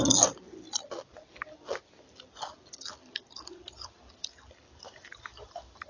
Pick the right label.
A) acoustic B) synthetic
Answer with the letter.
A